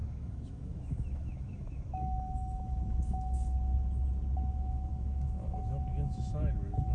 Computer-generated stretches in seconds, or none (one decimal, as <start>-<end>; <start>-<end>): 0.0-3.7; 4.5-6.9